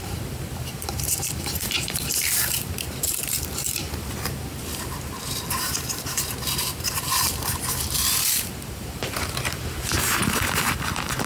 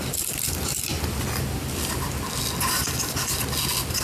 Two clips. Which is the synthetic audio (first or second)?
first